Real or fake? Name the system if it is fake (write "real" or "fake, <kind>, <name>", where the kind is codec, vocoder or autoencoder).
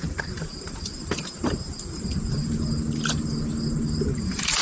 real